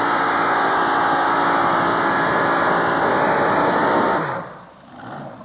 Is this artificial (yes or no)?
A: no